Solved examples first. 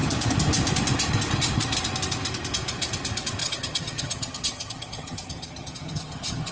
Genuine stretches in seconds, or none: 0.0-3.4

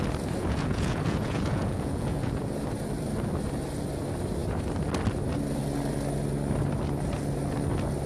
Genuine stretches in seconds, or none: 0.0-0.4; 2.3-8.1

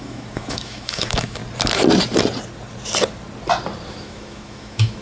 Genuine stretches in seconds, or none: 1.4-3.9

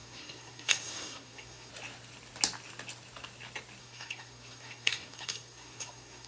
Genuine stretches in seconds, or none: 1.7-3.8

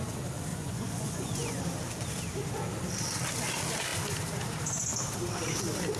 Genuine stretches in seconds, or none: 0.0-0.5; 1.6-6.0

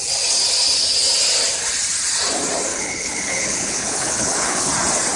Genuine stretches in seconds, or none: 0.0-2.7; 4.7-5.2